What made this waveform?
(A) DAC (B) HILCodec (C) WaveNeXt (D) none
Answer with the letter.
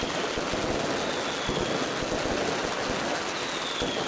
D